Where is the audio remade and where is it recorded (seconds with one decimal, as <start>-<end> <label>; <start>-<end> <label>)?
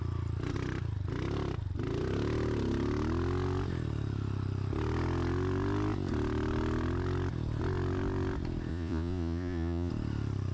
0.0-8.7 recorded; 8.7-9.9 remade; 9.9-10.5 recorded